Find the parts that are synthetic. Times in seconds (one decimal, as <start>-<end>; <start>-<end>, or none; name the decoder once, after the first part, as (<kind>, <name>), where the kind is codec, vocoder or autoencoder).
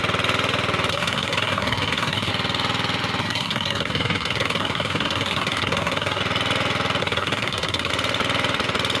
0.9-2.3 (codec, SNAC); 3.2-6.2; 7.0-7.9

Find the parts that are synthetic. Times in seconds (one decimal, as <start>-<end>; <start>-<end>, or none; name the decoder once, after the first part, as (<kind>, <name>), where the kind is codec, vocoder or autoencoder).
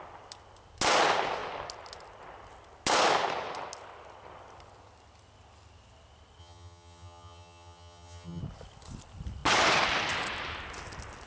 6.4-8.4 (vocoder, HiFi-GAN)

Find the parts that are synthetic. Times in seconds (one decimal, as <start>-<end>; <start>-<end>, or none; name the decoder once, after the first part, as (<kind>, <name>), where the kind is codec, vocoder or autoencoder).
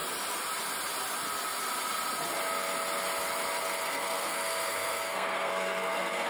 3.8-6.3 (codec, SNAC)